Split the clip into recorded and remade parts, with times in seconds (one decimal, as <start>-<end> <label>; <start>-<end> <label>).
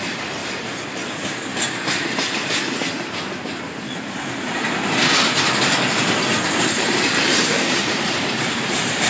0.0-0.4 remade; 0.4-1.1 recorded; 1.1-1.5 remade; 1.5-6.6 recorded; 6.6-9.1 remade